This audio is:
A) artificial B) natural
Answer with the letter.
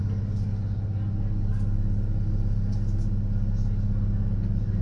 B